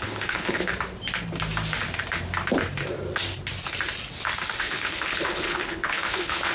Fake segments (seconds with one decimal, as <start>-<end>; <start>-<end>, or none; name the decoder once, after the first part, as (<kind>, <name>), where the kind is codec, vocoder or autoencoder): 0.0-0.7 (codec, HILCodec); 4.6-6.5